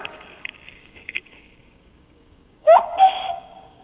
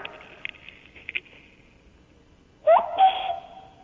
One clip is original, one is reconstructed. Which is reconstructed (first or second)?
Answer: first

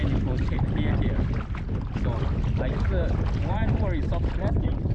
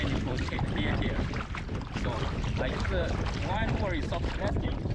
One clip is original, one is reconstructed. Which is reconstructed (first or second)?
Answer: second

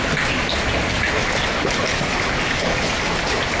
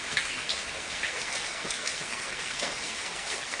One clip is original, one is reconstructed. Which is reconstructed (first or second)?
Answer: second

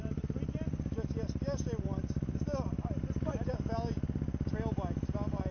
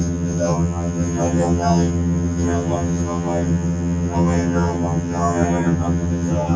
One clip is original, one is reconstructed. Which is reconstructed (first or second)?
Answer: second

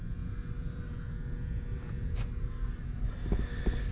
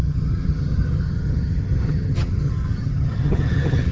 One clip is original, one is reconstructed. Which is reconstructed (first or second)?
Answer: second